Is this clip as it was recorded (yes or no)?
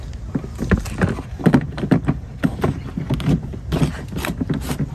yes